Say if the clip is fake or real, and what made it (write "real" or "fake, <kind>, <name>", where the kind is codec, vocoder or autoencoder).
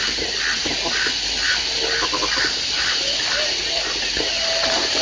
real